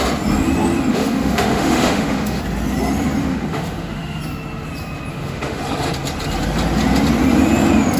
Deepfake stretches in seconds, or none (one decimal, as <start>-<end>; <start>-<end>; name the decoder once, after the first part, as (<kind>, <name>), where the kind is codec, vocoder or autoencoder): 0.9-2.4 (autoencoder, DAC-VAE); 3.2-4.2; 5.1-5.6